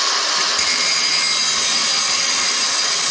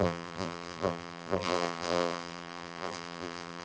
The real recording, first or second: first